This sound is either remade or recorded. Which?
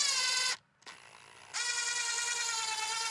recorded